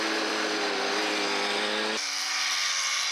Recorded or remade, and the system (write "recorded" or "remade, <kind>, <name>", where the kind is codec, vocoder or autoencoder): remade, vocoder, BigVGAN v2